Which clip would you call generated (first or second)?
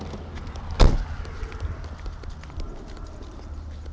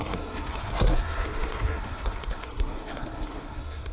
second